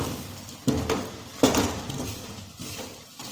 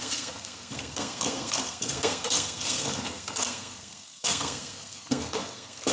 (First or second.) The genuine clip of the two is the first